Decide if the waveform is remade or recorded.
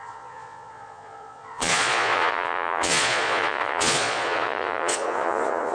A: remade